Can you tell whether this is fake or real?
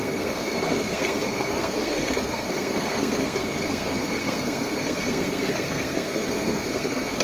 fake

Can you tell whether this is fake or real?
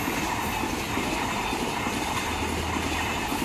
real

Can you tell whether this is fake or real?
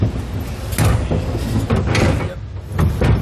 real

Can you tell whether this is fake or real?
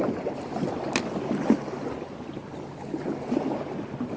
real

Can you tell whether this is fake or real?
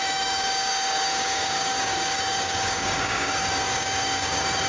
fake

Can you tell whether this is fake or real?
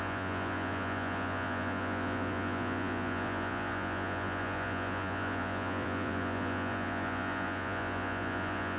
fake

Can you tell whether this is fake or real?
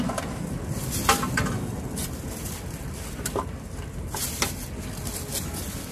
real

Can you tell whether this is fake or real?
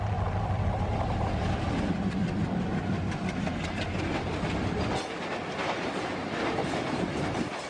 real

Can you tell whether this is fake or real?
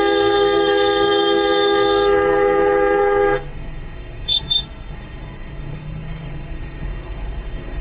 fake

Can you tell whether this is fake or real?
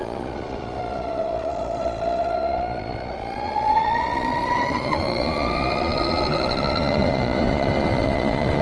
fake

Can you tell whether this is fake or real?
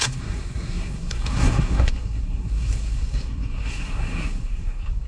fake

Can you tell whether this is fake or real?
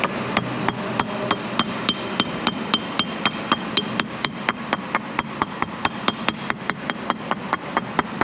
real